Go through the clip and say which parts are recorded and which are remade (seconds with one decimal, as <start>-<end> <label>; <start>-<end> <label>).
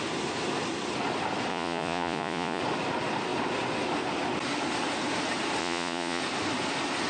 0.0-1.5 recorded; 1.5-2.6 remade; 2.6-5.6 recorded; 5.6-6.2 remade; 6.2-7.1 recorded